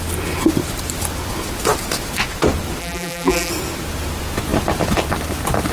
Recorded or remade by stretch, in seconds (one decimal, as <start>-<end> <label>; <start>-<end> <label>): 0.0-2.8 recorded; 2.8-3.5 remade; 3.5-5.7 recorded